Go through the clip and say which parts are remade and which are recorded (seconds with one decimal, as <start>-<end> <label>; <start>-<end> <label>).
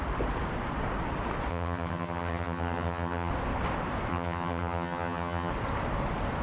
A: 0.0-1.5 recorded; 1.5-3.3 remade; 3.3-4.1 recorded; 4.1-5.5 remade; 5.5-6.4 recorded